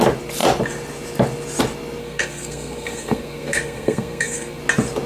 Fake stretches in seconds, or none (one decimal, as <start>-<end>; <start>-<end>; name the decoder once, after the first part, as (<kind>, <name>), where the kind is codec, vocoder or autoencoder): 2.0-4.6 (codec, SNAC)